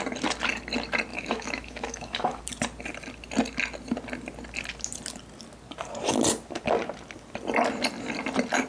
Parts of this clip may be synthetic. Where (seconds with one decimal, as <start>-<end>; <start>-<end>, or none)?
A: 1.1-2.4